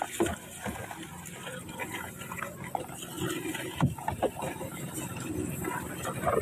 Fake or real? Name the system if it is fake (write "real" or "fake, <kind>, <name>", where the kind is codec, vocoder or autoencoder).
real